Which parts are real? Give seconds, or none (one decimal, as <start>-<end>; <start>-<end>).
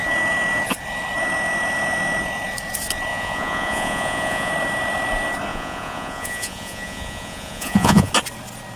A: 0.0-3.1; 4.5-5.5; 8.1-8.8